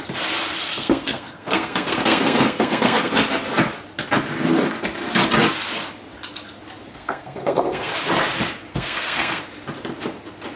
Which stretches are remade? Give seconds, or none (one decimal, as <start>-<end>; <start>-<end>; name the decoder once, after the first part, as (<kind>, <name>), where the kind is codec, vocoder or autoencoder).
0.7-3.1 (codec, SNAC); 6.9-7.9; 8.7-9.4